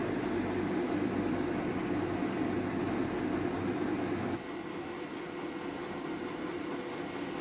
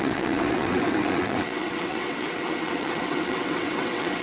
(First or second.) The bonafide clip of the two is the first